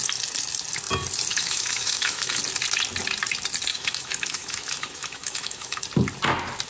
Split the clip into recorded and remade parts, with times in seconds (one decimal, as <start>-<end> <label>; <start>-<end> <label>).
0.0-1.3 recorded; 1.3-2.4 remade; 2.4-3.7 recorded; 3.7-5.8 remade; 5.8-6.7 recorded